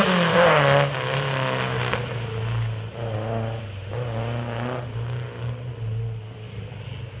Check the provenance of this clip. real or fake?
real